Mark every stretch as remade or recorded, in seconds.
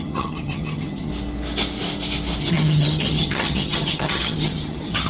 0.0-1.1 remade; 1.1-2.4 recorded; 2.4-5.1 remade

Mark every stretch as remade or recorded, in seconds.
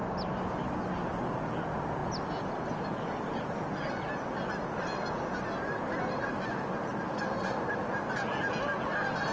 0.0-9.3 recorded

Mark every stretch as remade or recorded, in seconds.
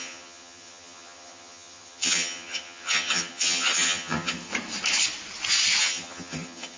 0.0-4.5 remade; 4.5-5.8 recorded; 5.8-6.8 remade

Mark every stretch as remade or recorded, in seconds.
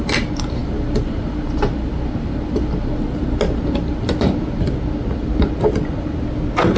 0.0-6.8 recorded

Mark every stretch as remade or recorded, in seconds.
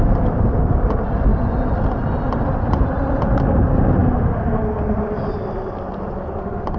0.0-6.8 recorded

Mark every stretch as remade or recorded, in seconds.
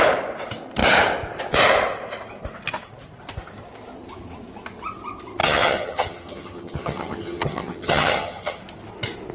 0.0-5.4 recorded; 5.4-8.6 remade; 8.6-9.3 recorded